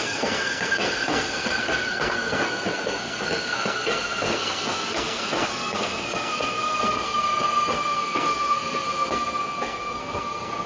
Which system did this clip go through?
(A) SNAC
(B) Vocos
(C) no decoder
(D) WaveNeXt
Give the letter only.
A